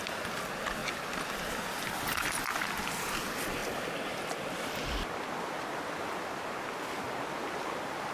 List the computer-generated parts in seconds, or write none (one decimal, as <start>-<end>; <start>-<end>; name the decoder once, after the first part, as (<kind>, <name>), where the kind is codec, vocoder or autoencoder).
none